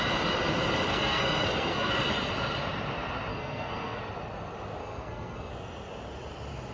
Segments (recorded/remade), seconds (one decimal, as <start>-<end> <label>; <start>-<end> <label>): 0.0-0.9 recorded; 0.9-1.9 remade; 1.9-3.3 recorded; 3.3-4.0 remade; 4.0-4.8 recorded; 4.8-5.5 remade; 5.5-6.7 recorded